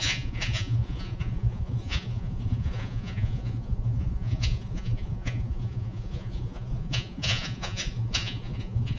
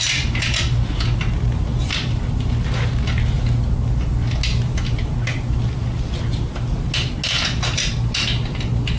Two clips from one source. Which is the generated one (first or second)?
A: first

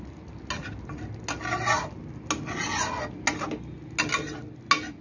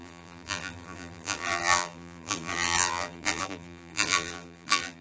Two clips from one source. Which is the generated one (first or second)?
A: second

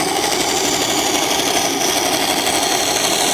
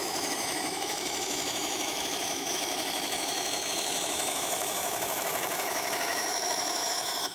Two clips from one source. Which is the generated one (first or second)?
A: second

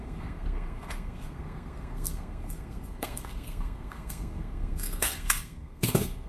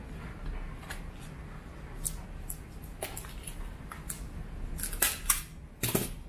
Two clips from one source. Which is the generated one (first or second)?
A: first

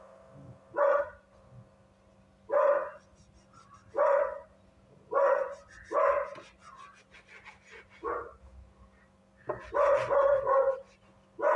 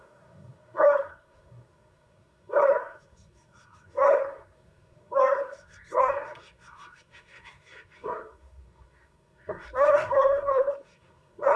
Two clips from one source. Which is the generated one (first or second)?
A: second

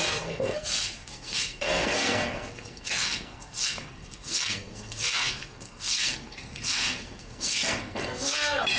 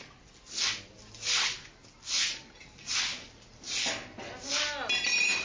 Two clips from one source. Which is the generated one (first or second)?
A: first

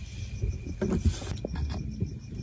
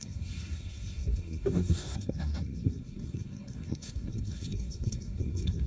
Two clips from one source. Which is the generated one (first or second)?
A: second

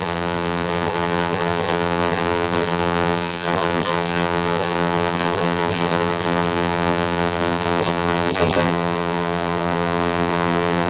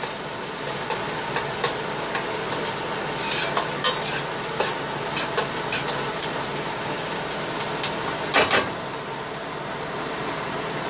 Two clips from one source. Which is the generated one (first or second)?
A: first